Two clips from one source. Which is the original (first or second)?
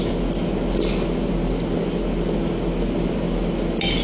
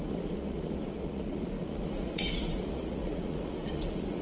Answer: first